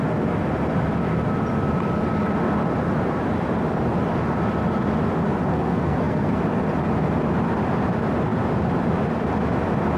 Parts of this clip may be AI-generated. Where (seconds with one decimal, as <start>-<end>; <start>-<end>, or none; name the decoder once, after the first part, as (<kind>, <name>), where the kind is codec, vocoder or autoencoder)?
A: 5.5-6.4 (codec, SNAC)